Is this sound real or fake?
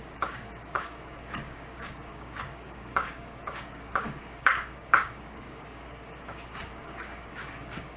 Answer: fake